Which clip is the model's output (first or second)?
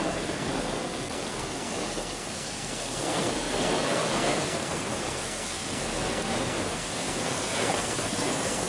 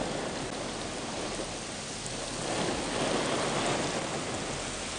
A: first